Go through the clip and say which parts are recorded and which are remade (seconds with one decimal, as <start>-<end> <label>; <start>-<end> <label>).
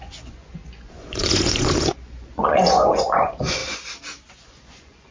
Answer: 0.0-3.6 remade; 3.6-4.3 recorded; 4.3-5.1 remade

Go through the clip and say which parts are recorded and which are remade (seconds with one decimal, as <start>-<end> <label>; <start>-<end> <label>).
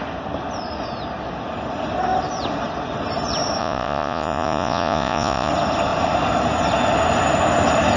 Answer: 0.0-3.6 recorded; 3.6-5.5 remade; 5.5-8.0 recorded